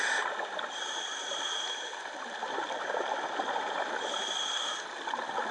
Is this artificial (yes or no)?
no